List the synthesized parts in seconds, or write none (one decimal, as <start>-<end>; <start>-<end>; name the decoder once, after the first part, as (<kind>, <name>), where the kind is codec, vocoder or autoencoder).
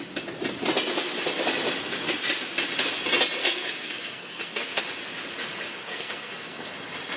3.4-4.8 (codec, SNAC); 5.9-6.7